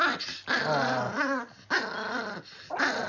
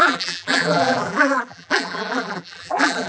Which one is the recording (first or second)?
first